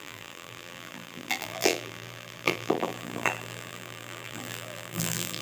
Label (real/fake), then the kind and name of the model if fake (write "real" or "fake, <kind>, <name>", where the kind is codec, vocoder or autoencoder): fake, vocoder, BigVGAN v2